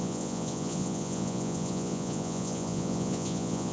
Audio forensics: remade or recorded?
remade